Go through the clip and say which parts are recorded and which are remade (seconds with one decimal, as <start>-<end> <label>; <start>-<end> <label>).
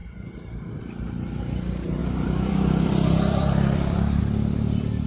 0.0-0.8 remade; 0.8-2.0 recorded; 2.0-4.2 remade; 4.2-5.1 recorded